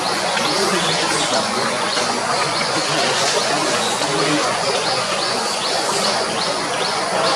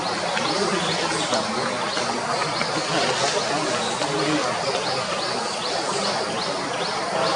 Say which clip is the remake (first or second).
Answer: first